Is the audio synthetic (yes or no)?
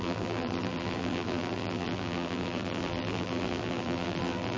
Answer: yes